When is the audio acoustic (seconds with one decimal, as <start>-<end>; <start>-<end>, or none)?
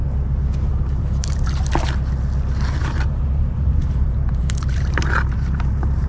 0.0-0.7; 1.7-2.8